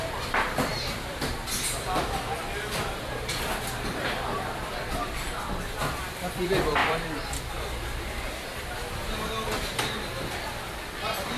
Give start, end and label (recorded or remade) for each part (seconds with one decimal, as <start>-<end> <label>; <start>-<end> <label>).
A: 0.0-9.0 remade; 9.0-9.8 recorded; 9.8-11.4 remade